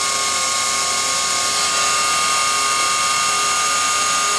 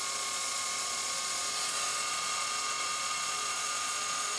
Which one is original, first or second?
first